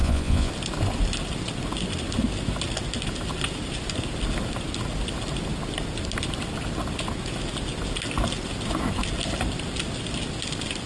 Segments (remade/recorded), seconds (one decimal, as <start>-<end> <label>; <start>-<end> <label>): 0.0-0.5 remade; 0.5-10.9 recorded